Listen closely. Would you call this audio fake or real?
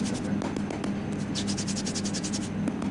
real